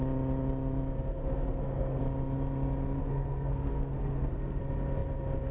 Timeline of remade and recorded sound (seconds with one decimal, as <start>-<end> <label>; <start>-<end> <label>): 0.0-1.1 recorded; 1.1-2.0 remade; 2.0-3.0 recorded; 3.0-4.6 remade; 4.6-5.5 recorded

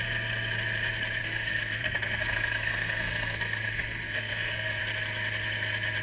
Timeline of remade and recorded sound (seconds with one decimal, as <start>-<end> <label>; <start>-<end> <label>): 0.0-1.2 recorded; 1.2-4.8 remade; 4.8-6.0 recorded

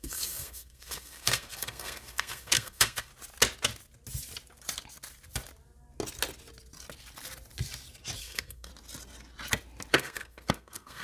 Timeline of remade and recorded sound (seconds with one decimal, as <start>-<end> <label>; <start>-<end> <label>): 0.0-3.1 remade; 3.1-8.2 recorded; 8.2-8.7 remade; 8.7-9.9 recorded; 9.9-11.0 remade